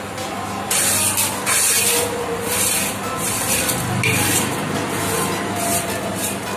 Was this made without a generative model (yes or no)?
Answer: yes